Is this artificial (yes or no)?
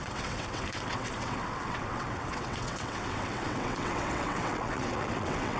yes